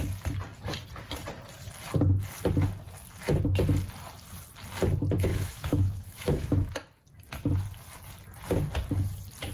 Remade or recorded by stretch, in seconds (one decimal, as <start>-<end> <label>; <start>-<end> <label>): 0.0-5.3 recorded; 5.3-6.7 remade; 6.7-9.5 recorded